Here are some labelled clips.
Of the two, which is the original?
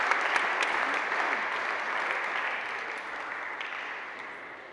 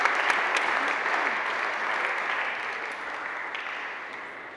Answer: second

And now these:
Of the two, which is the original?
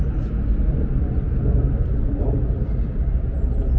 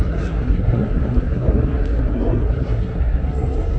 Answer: first